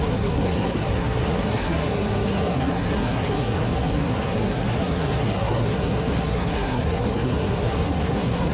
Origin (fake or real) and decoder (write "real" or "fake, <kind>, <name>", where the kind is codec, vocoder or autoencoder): fake, codec, SNAC